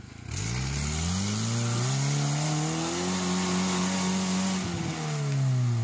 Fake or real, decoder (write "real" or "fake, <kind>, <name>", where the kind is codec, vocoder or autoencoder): real